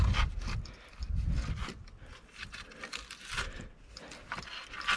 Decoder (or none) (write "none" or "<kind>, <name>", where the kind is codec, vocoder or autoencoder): none